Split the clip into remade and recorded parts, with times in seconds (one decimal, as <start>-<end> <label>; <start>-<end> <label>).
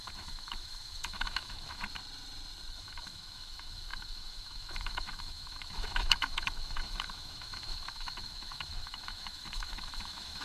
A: 0.0-1.8 remade; 1.8-2.7 recorded; 2.7-10.4 remade